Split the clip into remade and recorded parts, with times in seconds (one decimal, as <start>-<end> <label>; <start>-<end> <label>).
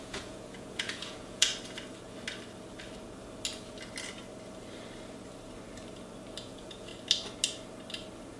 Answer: 0.0-1.5 remade; 1.5-6.4 recorded; 6.4-6.9 remade; 6.9-8.4 recorded